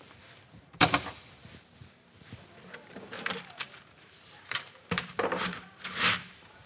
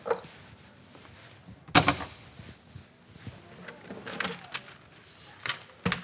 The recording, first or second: second